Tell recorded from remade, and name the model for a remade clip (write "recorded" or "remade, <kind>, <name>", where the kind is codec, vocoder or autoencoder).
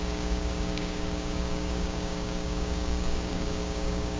remade, codec, DAC